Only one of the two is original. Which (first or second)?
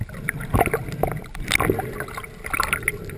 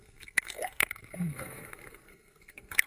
first